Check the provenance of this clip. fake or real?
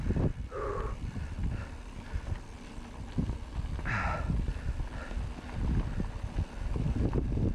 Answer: real